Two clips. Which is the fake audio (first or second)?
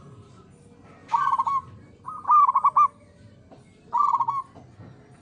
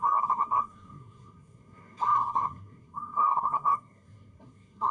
second